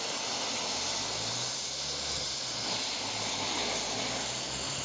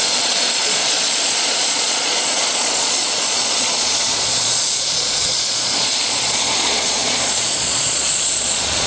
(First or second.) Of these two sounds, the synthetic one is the second